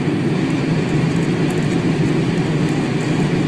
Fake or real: real